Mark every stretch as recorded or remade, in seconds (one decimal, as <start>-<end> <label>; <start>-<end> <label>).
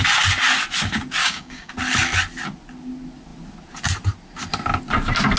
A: 0.0-1.2 recorded; 1.2-1.7 remade; 1.7-5.4 recorded